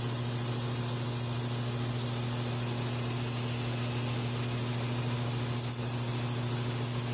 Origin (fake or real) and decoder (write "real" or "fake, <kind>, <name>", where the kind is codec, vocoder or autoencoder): real